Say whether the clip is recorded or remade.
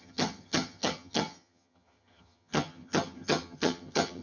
remade